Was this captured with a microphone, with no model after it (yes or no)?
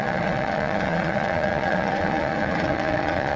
no